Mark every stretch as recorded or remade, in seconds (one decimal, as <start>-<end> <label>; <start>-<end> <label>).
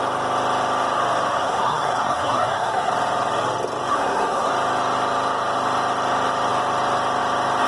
0.0-1.3 recorded; 1.3-2.9 remade; 2.9-3.9 recorded; 3.9-4.5 remade; 4.5-7.7 recorded